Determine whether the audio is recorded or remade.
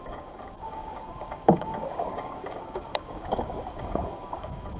remade